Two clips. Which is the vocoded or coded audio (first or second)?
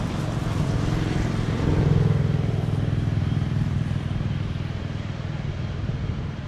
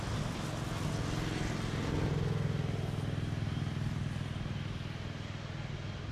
first